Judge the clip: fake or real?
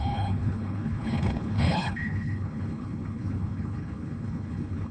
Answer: fake